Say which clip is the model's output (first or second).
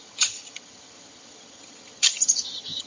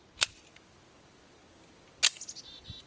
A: first